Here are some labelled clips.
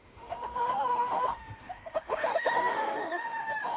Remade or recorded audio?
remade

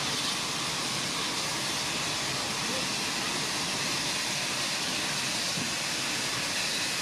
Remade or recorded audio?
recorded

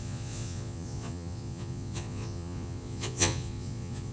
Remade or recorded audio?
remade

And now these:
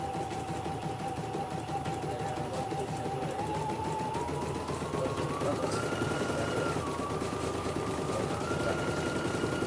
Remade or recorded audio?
recorded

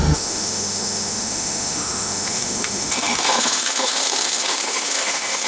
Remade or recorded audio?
remade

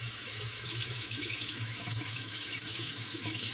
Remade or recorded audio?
remade